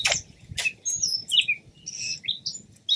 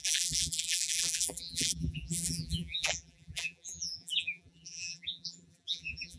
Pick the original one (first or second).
first